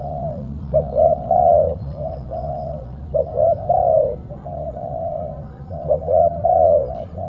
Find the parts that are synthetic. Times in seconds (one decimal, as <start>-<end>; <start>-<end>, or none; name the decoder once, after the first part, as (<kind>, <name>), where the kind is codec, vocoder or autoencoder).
0.0-3.3 (vocoder, Vocos); 4.3-7.3